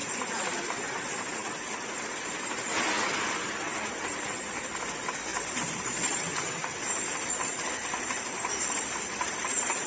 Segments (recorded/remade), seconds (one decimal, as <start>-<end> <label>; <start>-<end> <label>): 0.0-0.6 remade; 0.6-5.3 recorded; 5.3-9.3 remade; 9.3-9.9 recorded